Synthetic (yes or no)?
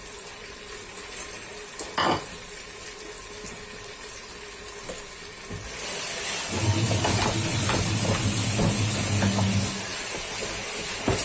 no